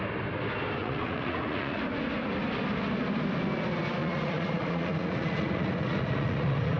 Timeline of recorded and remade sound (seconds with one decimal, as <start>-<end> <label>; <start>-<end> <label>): 0.0-0.8 recorded; 0.8-1.8 remade; 1.8-4.0 recorded; 4.0-6.8 remade